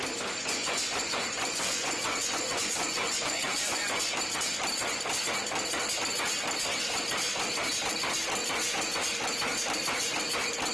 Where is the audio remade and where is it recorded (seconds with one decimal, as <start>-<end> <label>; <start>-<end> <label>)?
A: 0.0-0.4 recorded; 0.4-4.1 remade; 4.1-10.7 recorded